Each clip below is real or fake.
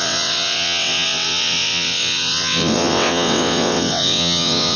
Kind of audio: fake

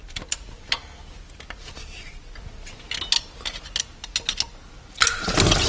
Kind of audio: real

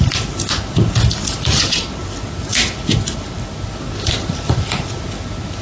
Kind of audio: real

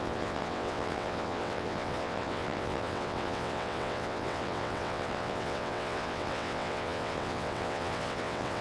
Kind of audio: fake